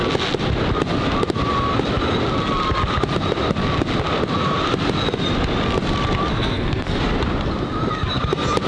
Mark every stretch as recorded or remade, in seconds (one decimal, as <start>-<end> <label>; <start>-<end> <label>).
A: 0.0-6.3 recorded; 6.3-7.0 remade; 7.0-8.7 recorded